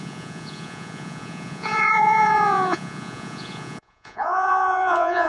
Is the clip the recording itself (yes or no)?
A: no